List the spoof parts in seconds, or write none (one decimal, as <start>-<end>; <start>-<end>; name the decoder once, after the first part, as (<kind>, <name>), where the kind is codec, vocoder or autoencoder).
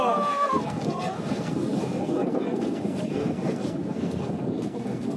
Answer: 0.0-5.2 (codec, SNAC)